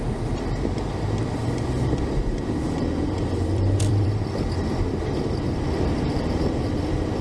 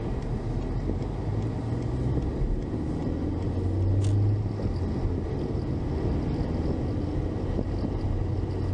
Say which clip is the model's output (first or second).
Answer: first